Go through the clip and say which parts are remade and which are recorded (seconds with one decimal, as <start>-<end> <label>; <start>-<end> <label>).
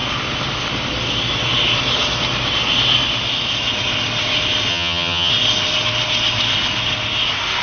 0.0-4.7 recorded; 4.7-5.3 remade; 5.3-7.6 recorded